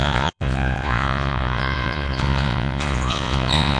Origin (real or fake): fake